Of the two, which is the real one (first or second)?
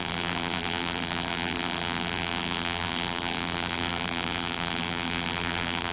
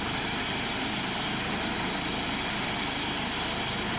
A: second